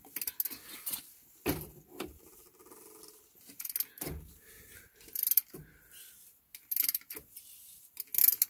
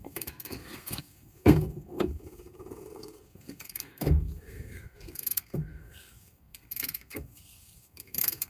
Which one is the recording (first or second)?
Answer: first